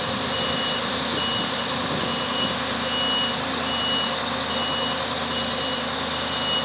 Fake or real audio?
real